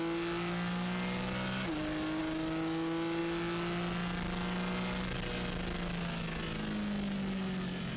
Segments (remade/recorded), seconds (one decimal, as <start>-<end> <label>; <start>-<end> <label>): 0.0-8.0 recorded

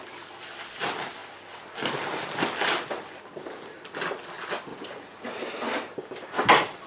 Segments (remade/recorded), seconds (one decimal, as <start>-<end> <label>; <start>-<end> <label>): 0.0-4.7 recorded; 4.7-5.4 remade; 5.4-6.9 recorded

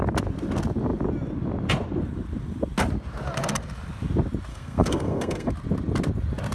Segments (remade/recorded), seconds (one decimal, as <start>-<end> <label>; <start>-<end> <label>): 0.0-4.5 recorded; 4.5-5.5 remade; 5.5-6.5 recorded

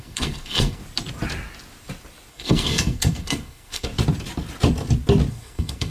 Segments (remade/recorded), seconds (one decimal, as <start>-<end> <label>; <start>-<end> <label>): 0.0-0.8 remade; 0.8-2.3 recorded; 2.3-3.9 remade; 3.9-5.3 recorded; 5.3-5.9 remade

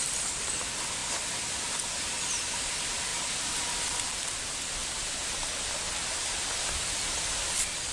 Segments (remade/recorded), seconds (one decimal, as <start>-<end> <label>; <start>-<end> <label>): 0.0-3.1 remade; 3.1-3.7 recorded; 3.7-5.2 remade; 5.2-6.6 recorded; 6.6-7.9 remade

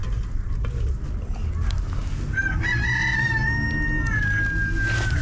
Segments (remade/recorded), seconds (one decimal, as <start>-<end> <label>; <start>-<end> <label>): 0.0-5.2 recorded

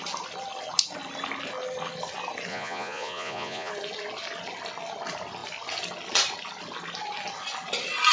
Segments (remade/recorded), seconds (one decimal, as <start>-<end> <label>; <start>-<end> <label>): 0.0-2.5 recorded; 2.5-3.7 remade; 3.7-8.1 recorded